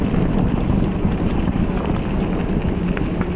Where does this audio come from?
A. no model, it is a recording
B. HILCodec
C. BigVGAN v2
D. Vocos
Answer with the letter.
A